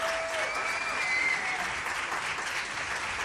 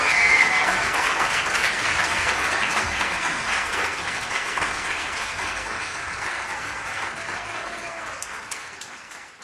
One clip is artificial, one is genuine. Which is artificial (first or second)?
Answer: second